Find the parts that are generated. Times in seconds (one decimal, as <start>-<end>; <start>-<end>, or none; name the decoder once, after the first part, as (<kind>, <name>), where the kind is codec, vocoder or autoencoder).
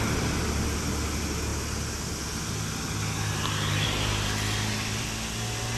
none